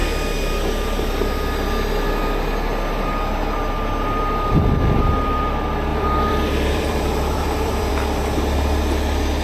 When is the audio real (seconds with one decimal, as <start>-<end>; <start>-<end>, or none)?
0.0-5.9; 7.9-9.4